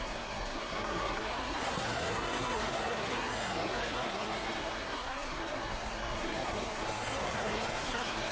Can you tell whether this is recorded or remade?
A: remade